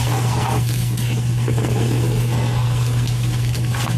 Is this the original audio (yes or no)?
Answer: no